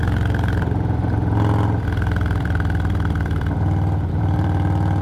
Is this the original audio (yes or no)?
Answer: no